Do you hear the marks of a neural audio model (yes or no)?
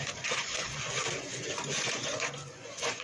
yes